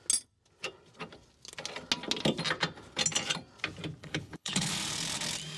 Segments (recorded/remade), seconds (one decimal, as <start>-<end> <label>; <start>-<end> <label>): 0.0-4.0 recorded; 4.0-4.7 remade; 4.7-5.6 recorded